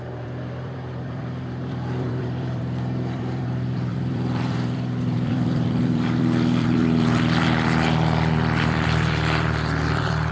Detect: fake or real fake